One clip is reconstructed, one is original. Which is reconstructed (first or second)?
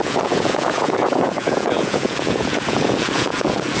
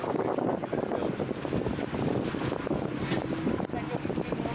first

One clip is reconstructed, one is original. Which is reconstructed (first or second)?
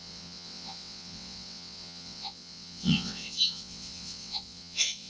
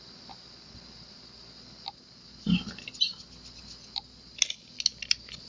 first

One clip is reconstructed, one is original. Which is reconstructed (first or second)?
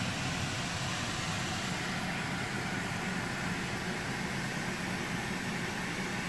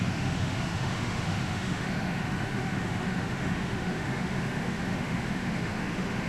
second